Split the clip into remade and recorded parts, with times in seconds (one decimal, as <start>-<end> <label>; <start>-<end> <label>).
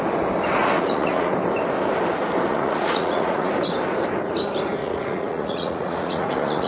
0.0-0.6 recorded; 0.6-1.3 remade; 1.3-2.5 recorded; 2.5-3.5 remade; 3.5-4.8 recorded; 4.8-6.7 remade